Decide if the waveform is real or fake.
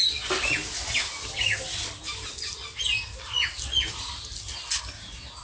real